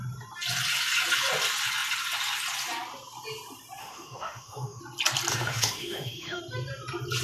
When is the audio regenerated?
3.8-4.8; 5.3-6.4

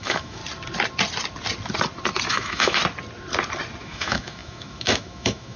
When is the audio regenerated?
0.0-0.4; 2.3-2.8; 3.8-5.6